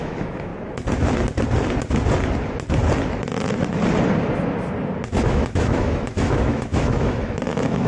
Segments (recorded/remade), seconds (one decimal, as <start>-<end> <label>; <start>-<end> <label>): 0.0-0.5 remade; 0.5-5.2 recorded; 5.2-7.9 remade